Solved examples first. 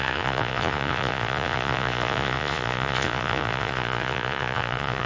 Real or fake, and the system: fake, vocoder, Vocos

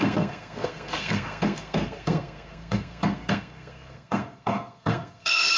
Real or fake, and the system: fake, codec, SNAC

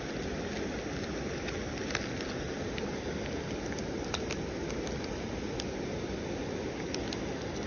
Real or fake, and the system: real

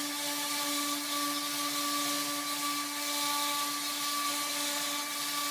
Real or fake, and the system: real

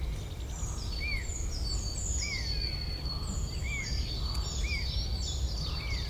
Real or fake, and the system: real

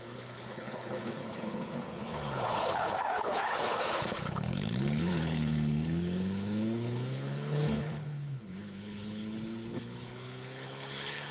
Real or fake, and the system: fake, codec, HILCodec